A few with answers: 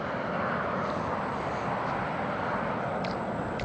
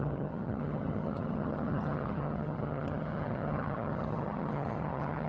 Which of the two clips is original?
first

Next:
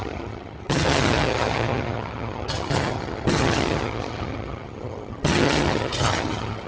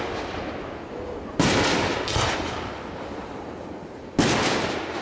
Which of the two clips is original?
second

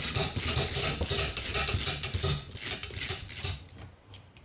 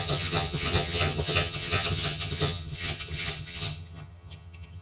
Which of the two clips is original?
first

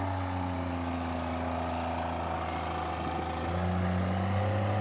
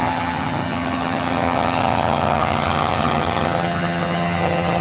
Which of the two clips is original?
first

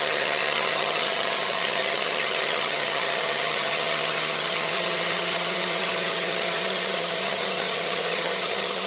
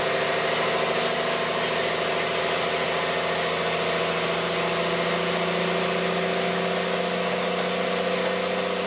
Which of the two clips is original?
second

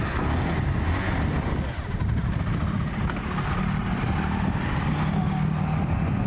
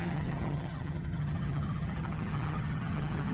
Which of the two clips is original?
first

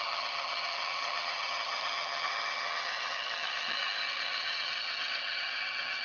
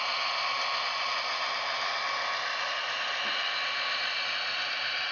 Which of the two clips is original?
second